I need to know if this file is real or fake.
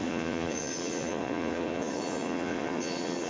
fake